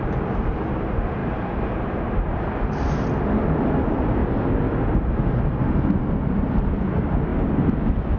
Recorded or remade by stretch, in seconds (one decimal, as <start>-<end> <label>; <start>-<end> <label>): 0.0-1.2 recorded; 1.2-2.6 remade; 2.6-8.2 recorded